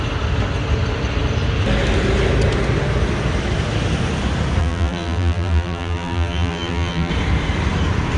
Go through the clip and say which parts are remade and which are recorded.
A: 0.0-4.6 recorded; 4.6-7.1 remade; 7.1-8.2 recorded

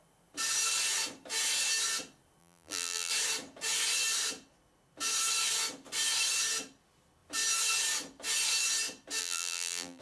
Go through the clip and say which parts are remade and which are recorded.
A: 0.0-2.4 recorded; 2.4-3.1 remade; 3.1-9.2 recorded; 9.2-10.0 remade

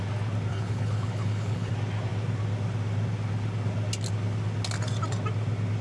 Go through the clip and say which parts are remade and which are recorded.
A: 0.0-0.5 recorded; 0.5-1.7 remade; 1.7-5.8 recorded

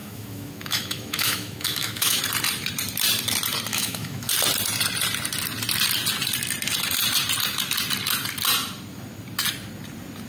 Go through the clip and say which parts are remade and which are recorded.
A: 0.0-2.2 remade; 2.2-3.7 recorded; 3.7-4.3 remade; 4.3-10.3 recorded

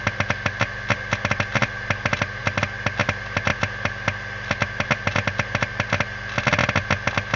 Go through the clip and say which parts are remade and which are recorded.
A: 0.0-7.4 recorded